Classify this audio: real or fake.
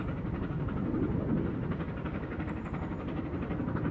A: real